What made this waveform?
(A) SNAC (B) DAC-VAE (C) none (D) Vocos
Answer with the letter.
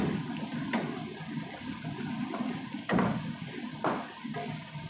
C